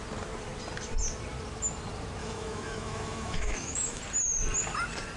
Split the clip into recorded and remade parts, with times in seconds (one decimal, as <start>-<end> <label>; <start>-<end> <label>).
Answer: 0.0-2.2 recorded; 2.2-4.0 remade; 4.0-5.2 recorded